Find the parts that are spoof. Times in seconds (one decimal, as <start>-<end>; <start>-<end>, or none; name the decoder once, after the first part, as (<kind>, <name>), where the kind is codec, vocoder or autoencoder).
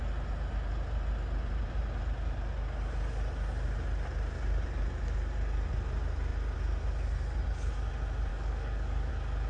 8.3-9.1 (codec, DAC)